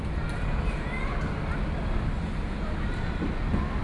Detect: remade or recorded recorded